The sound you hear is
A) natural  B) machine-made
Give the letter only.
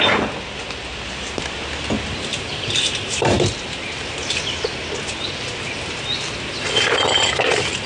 A